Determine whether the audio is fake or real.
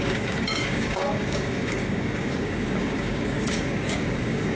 fake